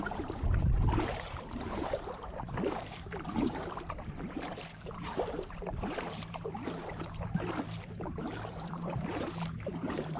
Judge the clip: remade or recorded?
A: remade